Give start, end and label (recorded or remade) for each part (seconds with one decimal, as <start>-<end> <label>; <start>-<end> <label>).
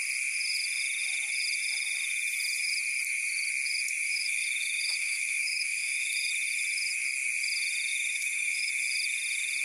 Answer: 0.0-4.1 recorded; 4.1-6.3 remade; 6.3-7.9 recorded; 7.9-8.7 remade; 8.7-9.6 recorded